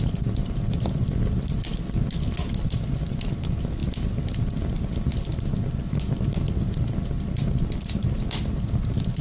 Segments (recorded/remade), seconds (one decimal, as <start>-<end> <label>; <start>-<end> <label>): 0.0-9.2 recorded